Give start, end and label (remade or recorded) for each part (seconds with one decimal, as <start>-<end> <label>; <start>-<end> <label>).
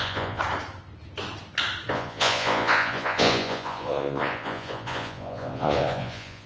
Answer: 0.0-0.4 remade; 0.4-1.9 recorded; 1.9-6.5 remade